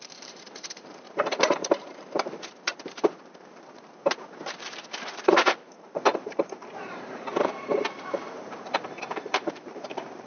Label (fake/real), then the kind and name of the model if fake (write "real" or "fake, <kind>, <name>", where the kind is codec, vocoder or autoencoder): fake, vocoder, BigVGAN v2